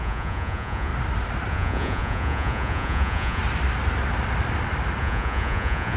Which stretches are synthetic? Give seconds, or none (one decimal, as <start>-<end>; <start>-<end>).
0.0-0.9; 1.5-3.4; 5.0-6.0